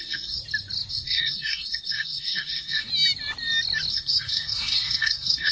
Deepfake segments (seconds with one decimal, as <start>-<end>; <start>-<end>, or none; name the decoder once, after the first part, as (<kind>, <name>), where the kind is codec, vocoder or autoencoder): 0.0-0.4 (codec, SNAC); 0.9-2.9; 3.9-5.5